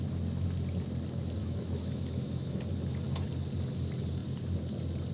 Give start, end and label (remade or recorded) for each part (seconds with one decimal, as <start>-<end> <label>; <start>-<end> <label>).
0.0-1.4 recorded; 1.4-2.6 remade; 2.6-5.1 recorded